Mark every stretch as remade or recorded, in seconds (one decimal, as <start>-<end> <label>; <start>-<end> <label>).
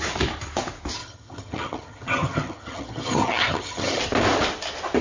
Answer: 0.0-1.0 recorded; 1.0-4.0 remade; 4.0-5.0 recorded